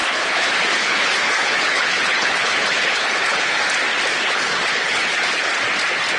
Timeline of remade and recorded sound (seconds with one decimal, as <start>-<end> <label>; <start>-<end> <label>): 0.0-3.6 remade; 3.6-4.1 recorded; 4.1-5.5 remade; 5.5-6.2 recorded